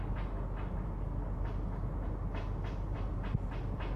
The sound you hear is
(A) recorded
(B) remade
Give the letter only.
A